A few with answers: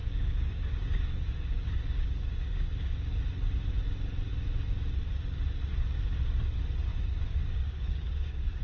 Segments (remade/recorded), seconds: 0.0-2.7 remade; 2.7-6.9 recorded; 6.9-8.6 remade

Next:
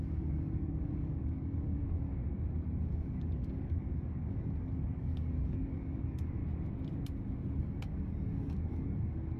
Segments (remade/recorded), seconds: 0.0-2.1 remade; 2.1-2.8 recorded; 2.8-6.4 remade; 6.4-7.6 recorded; 7.6-9.4 remade

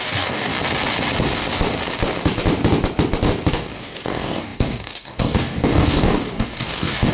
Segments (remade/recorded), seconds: 0.0-0.5 remade; 0.5-3.5 recorded; 3.5-7.1 remade